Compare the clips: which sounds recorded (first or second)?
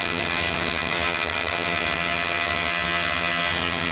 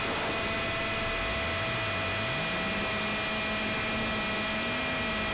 second